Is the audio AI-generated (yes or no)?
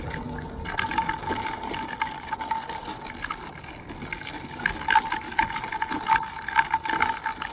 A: no